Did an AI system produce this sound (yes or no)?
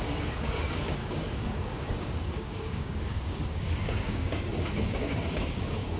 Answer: yes